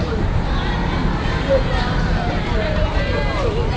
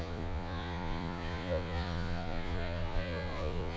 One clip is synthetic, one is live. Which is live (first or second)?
first